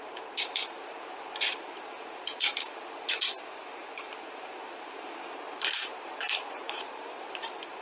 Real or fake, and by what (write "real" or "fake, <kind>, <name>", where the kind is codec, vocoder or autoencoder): fake, vocoder, BigVGAN v2